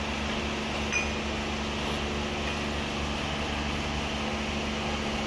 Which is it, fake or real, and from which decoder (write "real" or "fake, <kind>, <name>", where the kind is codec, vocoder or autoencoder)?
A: real